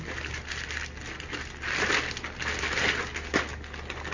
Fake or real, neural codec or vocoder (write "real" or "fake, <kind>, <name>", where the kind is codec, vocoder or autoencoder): real